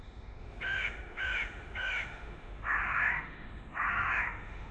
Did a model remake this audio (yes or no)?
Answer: yes